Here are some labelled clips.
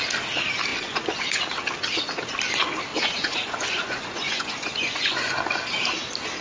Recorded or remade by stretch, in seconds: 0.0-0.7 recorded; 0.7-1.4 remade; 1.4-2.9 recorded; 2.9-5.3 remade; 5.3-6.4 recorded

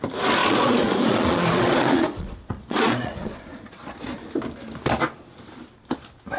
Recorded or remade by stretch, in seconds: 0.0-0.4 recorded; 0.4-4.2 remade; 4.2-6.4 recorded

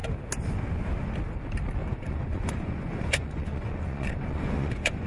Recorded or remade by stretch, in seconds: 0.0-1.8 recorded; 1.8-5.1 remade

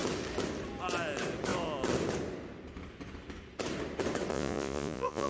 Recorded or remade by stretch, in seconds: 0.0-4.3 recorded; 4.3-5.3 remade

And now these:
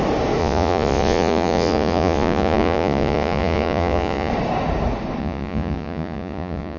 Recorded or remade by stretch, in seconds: 0.0-0.4 recorded; 0.4-4.3 remade; 4.3-5.2 recorded; 5.2-6.8 remade